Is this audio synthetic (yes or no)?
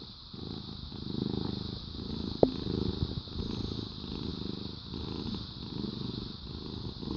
no